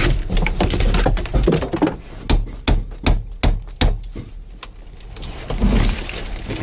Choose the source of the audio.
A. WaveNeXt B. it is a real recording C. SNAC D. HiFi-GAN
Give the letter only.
B